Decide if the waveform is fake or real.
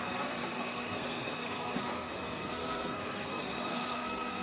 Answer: fake